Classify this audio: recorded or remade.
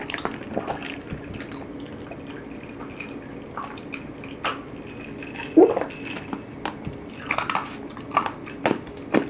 recorded